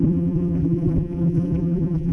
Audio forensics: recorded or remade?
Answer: remade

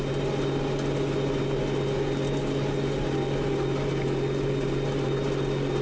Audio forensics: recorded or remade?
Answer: recorded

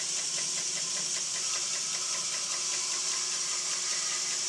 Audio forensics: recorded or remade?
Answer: recorded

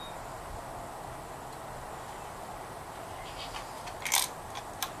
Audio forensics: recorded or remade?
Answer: recorded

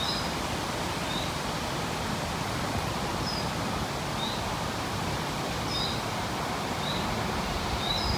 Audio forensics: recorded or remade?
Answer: recorded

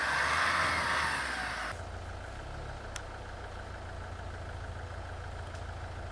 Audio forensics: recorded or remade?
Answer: recorded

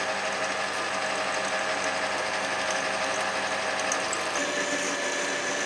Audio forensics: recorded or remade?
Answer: recorded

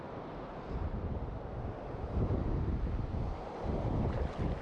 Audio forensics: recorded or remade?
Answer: recorded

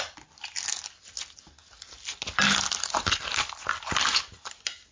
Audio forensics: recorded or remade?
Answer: recorded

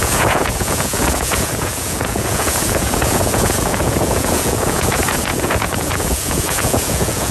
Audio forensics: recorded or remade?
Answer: remade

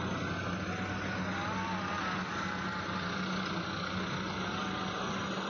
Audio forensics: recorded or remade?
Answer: recorded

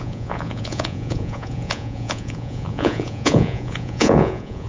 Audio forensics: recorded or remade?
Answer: remade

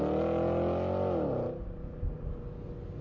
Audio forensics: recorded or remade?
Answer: recorded